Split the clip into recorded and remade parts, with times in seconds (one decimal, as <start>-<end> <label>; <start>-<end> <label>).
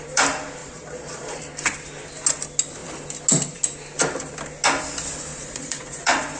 0.0-0.6 recorded; 0.6-1.4 remade; 1.4-5.3 recorded; 5.3-6.4 remade